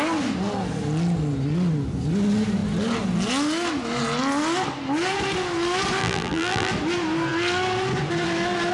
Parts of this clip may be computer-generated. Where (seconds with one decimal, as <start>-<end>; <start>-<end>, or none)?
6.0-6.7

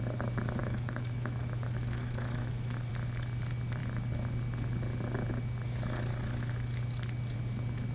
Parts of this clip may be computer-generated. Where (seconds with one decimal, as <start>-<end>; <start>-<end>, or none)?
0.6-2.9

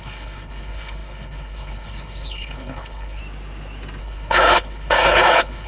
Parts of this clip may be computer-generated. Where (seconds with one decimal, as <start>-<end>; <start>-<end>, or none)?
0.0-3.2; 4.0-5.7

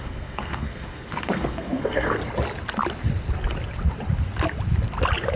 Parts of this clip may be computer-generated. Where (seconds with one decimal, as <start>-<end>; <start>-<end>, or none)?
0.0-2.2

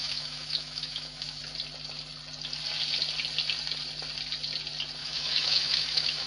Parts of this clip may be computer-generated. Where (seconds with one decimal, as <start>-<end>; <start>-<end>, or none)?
0.0-1.4; 5.0-6.3

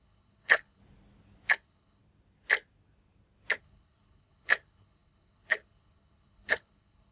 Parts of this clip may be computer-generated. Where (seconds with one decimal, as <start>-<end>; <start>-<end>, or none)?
0.0-0.8; 1.5-2.0; 3.6-7.1

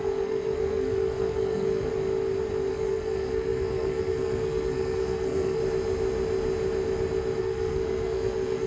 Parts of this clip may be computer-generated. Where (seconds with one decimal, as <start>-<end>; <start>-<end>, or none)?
0.0-1.9; 2.7-5.6; 7.4-8.7